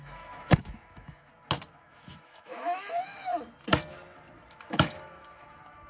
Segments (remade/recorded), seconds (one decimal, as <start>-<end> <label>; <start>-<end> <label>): 0.0-1.3 remade; 1.3-1.8 recorded; 1.8-3.3 remade; 3.3-4.5 recorded; 4.5-5.9 remade